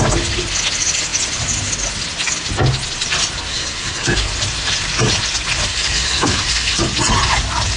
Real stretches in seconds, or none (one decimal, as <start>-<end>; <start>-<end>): 0.0-3.5; 4.3-5.7; 6.8-7.8